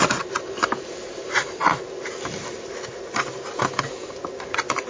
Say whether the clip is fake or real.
real